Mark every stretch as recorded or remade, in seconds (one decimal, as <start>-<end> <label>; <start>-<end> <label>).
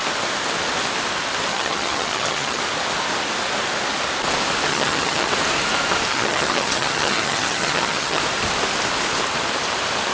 0.0-1.5 recorded; 1.5-2.6 remade; 2.6-4.7 recorded; 4.7-5.3 remade; 5.3-6.1 recorded; 6.1-8.2 remade; 8.2-10.1 recorded